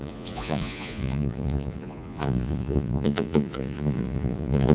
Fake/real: fake